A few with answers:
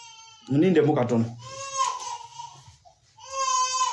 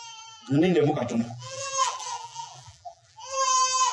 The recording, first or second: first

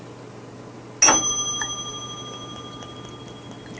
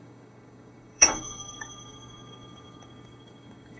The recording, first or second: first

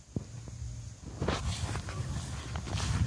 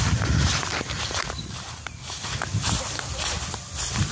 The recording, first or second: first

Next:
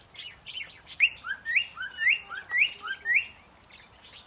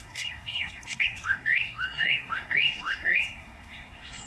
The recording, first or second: first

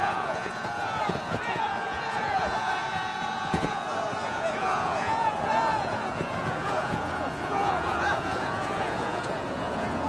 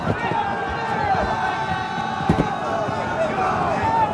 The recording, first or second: second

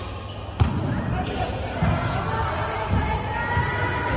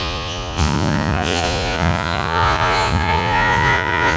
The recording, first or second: first